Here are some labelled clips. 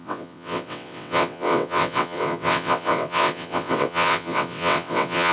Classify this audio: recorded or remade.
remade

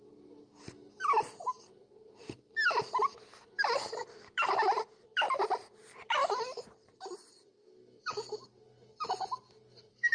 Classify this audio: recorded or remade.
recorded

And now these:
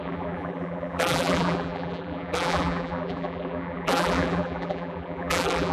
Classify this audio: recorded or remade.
remade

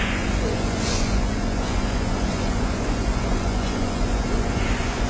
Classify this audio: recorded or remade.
remade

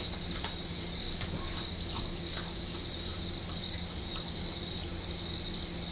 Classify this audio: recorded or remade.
remade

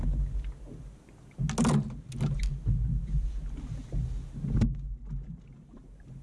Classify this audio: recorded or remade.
recorded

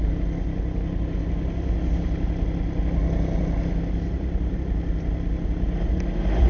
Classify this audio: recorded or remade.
recorded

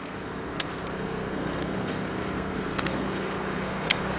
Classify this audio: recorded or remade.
remade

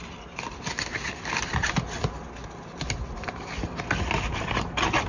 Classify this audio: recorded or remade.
recorded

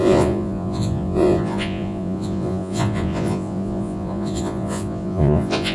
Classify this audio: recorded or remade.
remade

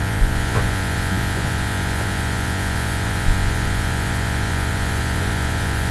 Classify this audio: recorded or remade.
remade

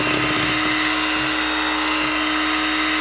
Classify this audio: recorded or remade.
recorded